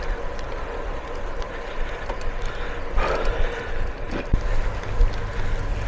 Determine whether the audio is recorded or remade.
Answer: recorded